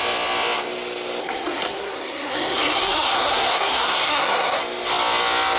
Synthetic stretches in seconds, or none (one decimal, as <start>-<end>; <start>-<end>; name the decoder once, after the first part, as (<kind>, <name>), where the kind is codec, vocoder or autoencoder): 1.2-4.6 (codec, SNAC)

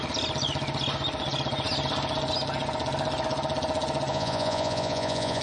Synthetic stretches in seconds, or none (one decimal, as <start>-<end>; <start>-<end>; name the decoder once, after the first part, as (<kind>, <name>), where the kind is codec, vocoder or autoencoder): 4.1-5.4 (vocoder, Vocos)

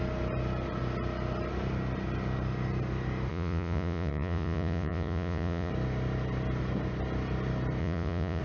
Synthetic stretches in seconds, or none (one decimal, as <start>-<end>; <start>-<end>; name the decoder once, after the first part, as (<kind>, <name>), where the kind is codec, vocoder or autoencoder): 3.3-5.7 (vocoder, Vocos); 7.8-8.4

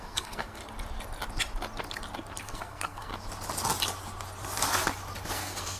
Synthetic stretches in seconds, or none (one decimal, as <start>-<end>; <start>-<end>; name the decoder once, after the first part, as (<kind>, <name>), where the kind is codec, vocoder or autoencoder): 0.0-0.6 (codec, SNAC); 2.4-3.1; 5.3-5.8

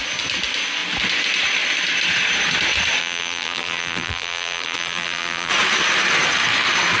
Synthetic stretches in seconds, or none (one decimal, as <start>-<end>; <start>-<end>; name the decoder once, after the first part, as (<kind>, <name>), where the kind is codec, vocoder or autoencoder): 3.0-5.5 (vocoder, BigVGAN v2)

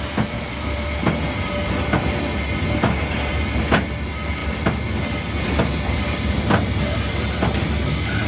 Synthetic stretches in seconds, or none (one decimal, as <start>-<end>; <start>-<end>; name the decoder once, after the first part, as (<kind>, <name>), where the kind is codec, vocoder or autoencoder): none

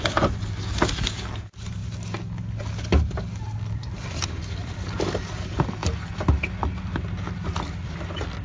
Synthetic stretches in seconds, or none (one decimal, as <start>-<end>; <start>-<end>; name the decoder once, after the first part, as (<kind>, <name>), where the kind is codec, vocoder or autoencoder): 0.0-1.8 (vocoder, BigVGAN v2); 4.5-5.8; 6.8-8.4